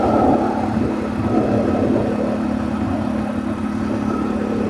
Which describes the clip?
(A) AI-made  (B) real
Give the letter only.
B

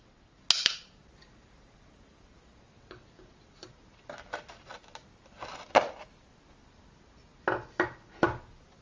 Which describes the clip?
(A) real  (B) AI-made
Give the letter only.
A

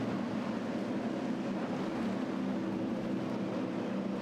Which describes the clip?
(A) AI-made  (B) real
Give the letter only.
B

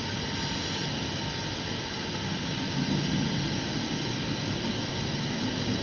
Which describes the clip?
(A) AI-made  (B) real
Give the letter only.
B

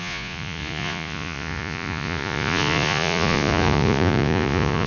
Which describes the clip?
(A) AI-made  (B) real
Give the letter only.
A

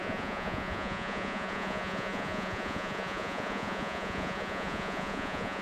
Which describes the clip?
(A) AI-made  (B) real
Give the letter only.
A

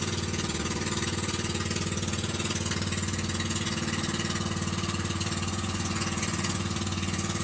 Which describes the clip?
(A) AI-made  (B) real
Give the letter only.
A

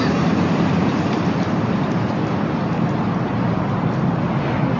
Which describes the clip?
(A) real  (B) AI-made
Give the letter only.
A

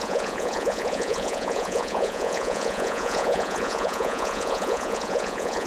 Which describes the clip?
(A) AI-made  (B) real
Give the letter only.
A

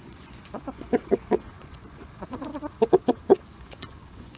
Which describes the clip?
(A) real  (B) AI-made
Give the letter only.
B